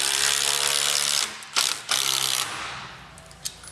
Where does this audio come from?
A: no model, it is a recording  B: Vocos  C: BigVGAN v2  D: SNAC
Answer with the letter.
A